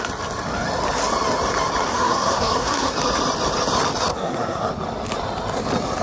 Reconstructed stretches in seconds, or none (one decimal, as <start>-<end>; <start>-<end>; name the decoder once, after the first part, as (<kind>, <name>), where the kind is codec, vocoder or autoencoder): 1.9-2.9 (codec, SNAC); 4.1-4.7